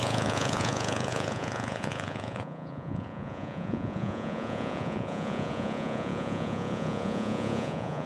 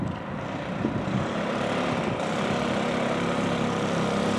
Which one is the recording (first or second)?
second